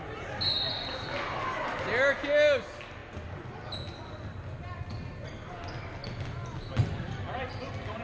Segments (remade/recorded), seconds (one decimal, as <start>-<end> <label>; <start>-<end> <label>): 0.0-8.0 recorded